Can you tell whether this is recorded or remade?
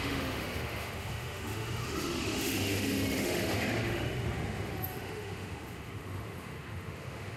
remade